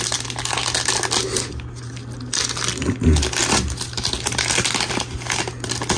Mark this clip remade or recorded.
recorded